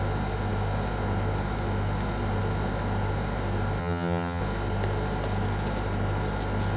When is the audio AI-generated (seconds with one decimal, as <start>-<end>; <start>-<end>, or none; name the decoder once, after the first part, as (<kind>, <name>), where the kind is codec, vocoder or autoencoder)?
3.8-4.4 (vocoder, HiFi-GAN)